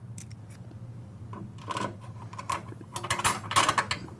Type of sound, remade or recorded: recorded